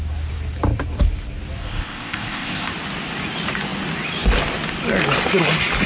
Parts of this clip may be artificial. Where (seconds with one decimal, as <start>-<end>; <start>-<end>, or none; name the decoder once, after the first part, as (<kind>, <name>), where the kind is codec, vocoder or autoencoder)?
1.6-2.7 (codec, ZipCodec)